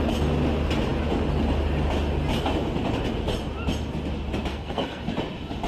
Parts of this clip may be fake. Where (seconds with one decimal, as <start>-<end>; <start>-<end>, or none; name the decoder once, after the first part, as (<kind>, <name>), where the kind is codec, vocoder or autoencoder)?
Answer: 4.5-5.0 (codec, SNAC)